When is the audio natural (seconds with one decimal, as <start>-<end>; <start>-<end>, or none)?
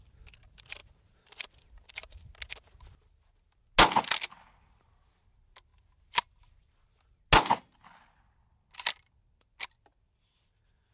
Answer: 0.0-10.9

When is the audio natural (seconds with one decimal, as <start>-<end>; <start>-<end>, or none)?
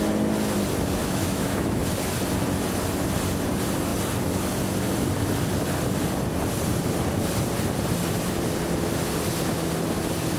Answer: 0.0-1.0; 1.8-10.4